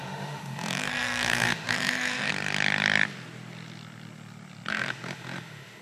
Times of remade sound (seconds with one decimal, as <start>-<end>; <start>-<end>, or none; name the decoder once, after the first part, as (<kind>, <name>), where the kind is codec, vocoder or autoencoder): 0.0-2.3 (autoencoder, DAC-VAE); 4.7-5.8